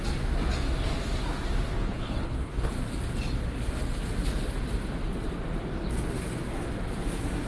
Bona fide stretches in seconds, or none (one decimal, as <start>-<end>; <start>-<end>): 0.0-1.8; 2.7-7.5